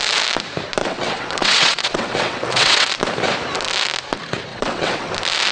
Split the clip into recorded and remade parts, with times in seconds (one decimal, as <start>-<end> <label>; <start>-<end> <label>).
0.0-0.8 recorded; 0.8-3.0 remade; 3.0-4.5 recorded; 4.5-5.1 remade; 5.1-5.5 recorded